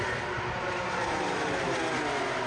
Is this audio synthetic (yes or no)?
no